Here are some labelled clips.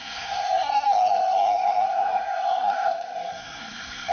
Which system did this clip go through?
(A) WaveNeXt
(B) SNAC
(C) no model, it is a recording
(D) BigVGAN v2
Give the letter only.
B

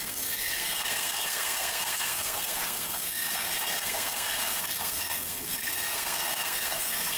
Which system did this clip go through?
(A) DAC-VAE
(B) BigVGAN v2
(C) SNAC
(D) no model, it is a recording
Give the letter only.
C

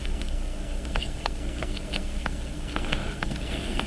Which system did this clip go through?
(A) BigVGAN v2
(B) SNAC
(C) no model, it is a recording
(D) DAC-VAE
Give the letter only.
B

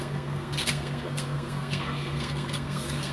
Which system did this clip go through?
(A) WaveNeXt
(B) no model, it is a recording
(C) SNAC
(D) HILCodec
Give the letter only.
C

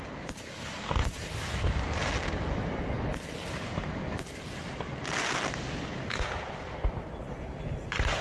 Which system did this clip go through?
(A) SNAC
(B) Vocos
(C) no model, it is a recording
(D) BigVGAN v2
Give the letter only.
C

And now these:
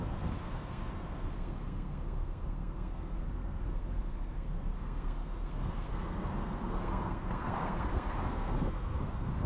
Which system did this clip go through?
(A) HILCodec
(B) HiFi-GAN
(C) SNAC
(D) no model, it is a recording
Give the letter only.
C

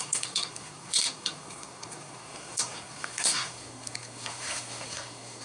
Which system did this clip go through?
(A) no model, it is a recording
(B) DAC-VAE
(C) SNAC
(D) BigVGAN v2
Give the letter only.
C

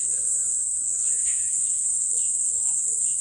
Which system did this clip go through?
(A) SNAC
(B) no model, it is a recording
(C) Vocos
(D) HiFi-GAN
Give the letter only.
A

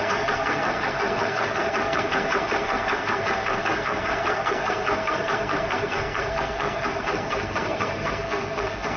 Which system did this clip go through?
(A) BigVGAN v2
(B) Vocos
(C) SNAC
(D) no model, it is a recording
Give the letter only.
C